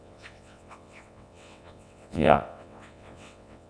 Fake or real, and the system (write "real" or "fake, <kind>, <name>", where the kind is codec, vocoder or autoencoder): fake, vocoder, WaveNeXt